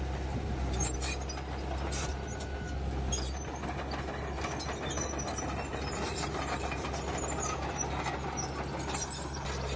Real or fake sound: real